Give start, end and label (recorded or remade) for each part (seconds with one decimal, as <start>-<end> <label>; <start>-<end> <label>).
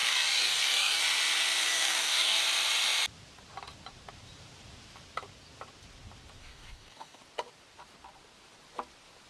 0.0-1.0 remade; 1.0-1.6 recorded; 1.6-2.4 remade; 2.4-6.4 recorded; 6.4-7.2 remade; 7.2-9.3 recorded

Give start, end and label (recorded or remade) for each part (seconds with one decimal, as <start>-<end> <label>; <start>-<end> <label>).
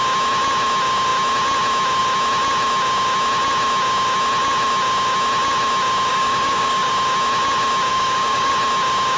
0.0-6.1 recorded; 6.1-6.9 remade; 6.9-7.9 recorded; 7.9-8.5 remade; 8.5-9.2 recorded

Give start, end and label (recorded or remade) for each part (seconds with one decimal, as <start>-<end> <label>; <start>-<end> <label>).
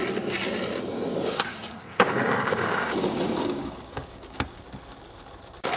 0.0-1.1 recorded; 1.1-4.6 remade; 4.6-5.8 recorded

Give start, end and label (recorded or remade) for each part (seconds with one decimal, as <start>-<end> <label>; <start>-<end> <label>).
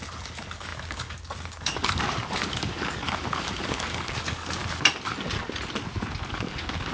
0.0-4.6 remade; 4.6-6.2 recorded; 6.2-6.9 remade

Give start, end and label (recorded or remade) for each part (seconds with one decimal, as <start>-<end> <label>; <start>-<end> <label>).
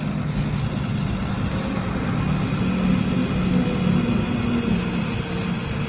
0.0-5.9 recorded